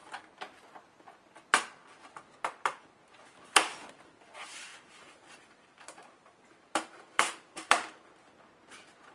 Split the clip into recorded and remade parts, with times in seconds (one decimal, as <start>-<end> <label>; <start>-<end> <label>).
0.0-4.5 recorded; 4.5-7.9 remade; 7.9-9.1 recorded